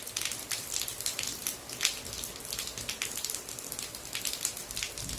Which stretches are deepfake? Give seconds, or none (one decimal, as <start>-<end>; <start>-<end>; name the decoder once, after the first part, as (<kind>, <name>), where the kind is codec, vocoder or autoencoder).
none